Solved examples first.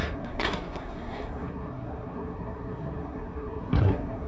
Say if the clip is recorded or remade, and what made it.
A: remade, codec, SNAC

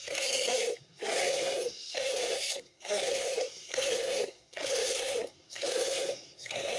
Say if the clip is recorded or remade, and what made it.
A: remade, codec, SNAC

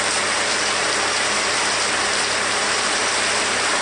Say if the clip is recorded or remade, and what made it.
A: recorded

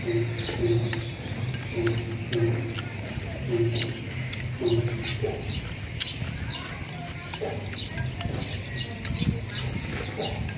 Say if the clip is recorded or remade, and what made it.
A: recorded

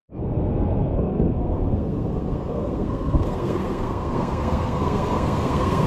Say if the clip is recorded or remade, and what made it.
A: remade, codec, SNAC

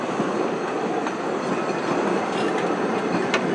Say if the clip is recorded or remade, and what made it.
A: recorded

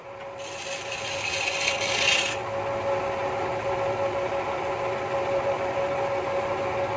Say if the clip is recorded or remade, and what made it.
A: recorded